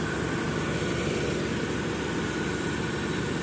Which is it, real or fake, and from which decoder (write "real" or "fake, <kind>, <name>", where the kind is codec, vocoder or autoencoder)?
real